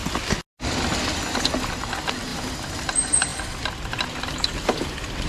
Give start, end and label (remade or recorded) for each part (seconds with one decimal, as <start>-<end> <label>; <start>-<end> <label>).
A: 0.0-2.3 recorded; 2.3-2.8 remade; 2.8-5.3 recorded